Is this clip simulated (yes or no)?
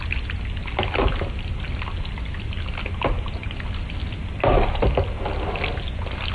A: no